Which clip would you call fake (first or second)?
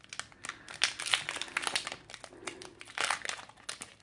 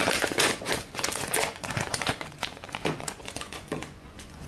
second